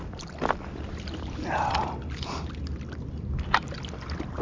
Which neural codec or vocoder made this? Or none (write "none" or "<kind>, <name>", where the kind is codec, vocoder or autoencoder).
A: none